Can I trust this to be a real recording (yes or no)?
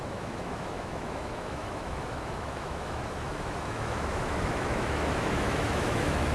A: no